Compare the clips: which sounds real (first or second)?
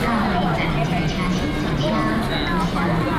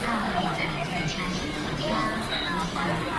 first